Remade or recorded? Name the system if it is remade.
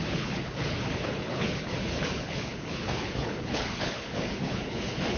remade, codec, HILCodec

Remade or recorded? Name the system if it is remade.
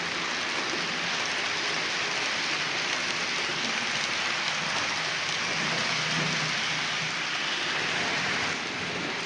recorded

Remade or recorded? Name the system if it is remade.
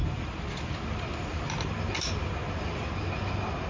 recorded